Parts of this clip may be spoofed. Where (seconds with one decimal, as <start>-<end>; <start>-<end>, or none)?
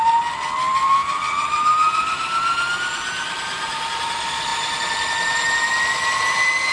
none